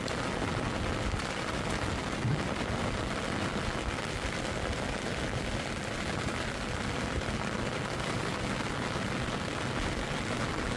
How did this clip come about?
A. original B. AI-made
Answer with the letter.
A